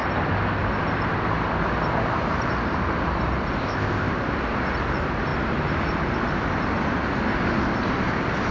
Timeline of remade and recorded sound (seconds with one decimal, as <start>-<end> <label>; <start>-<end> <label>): 0.0-3.6 recorded; 3.6-4.1 remade; 4.1-8.5 recorded